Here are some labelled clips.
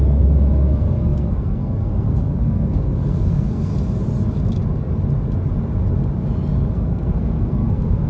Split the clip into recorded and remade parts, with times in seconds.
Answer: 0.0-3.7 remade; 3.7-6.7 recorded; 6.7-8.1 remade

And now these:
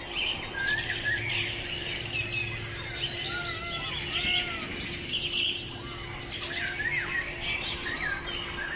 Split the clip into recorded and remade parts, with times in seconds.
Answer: 0.0-8.8 recorded

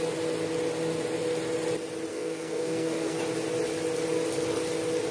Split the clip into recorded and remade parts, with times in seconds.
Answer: 0.0-2.1 recorded; 2.1-3.2 remade; 3.2-5.1 recorded

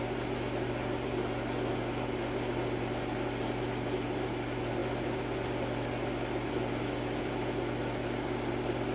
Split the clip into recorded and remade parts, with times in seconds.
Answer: 0.0-8.9 recorded

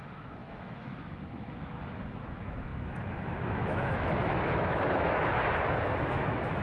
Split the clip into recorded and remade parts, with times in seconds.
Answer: 0.0-5.4 remade; 5.4-6.0 recorded; 6.0-6.6 remade

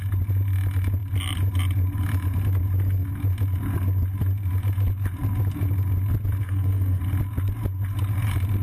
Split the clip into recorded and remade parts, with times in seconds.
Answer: 0.0-6.4 recorded; 6.4-7.0 remade; 7.0-8.6 recorded

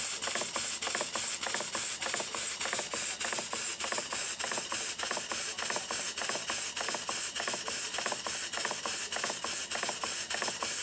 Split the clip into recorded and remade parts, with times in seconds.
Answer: 0.0-10.8 recorded